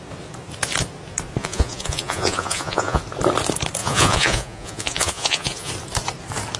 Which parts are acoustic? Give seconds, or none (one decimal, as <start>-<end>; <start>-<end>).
0.0-1.4; 3.0-3.8; 5.7-6.6